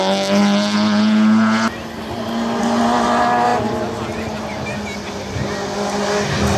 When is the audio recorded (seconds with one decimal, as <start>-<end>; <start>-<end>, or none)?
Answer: 0.0-6.6